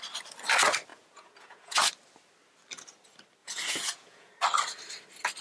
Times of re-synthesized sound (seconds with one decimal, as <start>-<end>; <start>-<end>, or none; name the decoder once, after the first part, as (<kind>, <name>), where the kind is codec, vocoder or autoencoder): 0.9-1.9 (vocoder, Vocos); 3.4-4.3

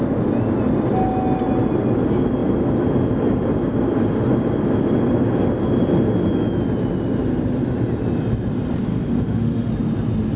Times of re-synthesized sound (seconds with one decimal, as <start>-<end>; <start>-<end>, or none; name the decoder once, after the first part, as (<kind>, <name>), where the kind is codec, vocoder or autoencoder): 8.9-9.7 (autoencoder, DAC-VAE)

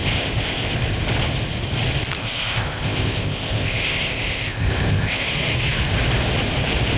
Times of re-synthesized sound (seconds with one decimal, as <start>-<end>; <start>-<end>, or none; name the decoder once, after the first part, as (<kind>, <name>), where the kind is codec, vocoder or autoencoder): 0.0-0.7 (codec, ZipCodec); 2.2-5.3